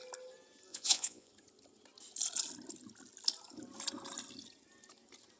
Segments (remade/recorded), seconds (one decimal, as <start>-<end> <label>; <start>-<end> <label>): 0.0-0.7 recorded; 0.7-1.3 remade; 1.3-5.4 recorded